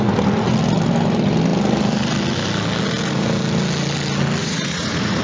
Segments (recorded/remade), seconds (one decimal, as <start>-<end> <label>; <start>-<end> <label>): 0.0-4.4 recorded; 4.4-5.2 remade